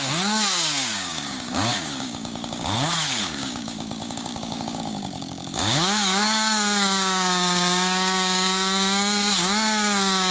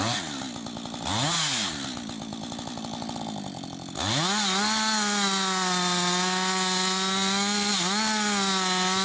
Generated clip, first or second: first